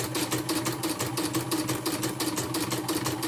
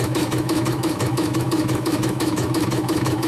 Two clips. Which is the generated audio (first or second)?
second